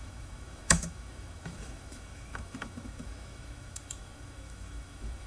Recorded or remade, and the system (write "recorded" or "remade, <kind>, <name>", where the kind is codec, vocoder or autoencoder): remade, autoencoder, DAC-VAE